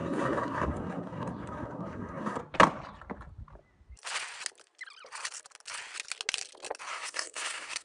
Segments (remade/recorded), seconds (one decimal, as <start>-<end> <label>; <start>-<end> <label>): 0.0-2.4 remade; 2.4-6.9 recorded; 6.9-7.8 remade